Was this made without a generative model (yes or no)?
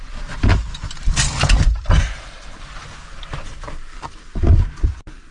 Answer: yes